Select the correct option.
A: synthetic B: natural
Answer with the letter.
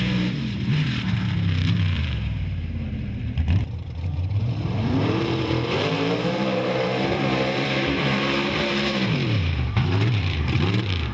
A